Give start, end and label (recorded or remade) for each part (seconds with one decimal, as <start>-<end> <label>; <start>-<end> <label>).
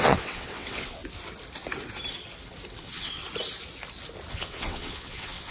0.0-1.0 remade; 1.0-2.8 recorded; 2.8-3.2 remade; 3.2-4.3 recorded; 4.3-5.5 remade